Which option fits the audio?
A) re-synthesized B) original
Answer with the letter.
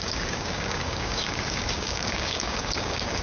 A